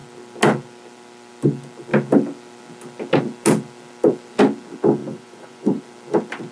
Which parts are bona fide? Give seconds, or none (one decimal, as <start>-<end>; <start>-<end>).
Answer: 0.0-5.0; 5.8-6.5